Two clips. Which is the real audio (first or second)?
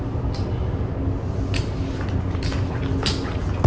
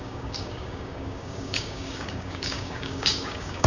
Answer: first